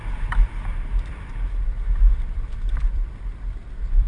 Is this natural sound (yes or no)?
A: no